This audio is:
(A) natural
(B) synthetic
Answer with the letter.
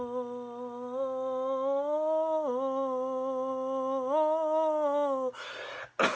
A